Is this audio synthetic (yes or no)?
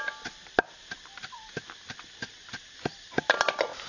no